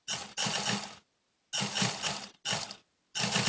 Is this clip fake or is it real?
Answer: real